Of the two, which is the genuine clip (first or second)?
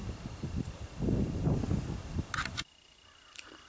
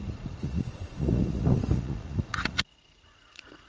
first